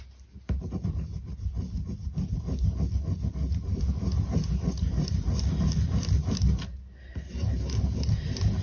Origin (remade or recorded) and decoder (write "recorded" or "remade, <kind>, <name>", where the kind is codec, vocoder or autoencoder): recorded